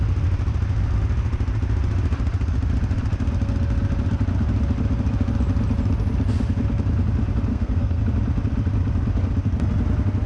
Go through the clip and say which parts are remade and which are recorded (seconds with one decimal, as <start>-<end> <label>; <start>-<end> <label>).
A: 0.0-7.5 recorded; 7.5-8.0 remade; 8.0-10.3 recorded